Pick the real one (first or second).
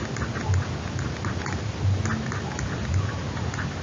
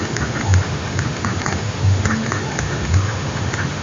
first